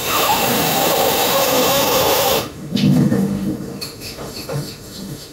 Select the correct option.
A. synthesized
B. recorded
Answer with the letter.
A